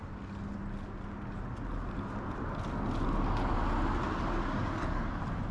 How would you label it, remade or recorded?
recorded